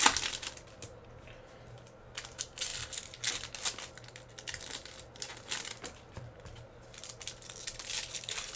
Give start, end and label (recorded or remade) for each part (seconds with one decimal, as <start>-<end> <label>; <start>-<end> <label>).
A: 0.0-8.6 recorded